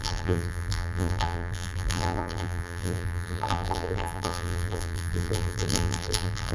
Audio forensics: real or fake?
fake